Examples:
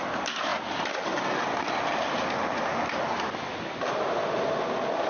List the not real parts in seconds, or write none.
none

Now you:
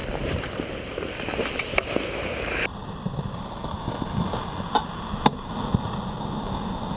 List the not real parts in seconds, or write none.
0.0-1.6 (vocoder, BigVGAN v2); 2.8-4.4